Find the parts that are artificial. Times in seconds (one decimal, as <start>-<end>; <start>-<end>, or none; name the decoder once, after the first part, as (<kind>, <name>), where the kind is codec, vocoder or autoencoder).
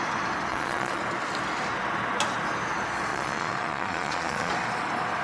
0.5-1.0 (vocoder, Vocos); 3.1-4.5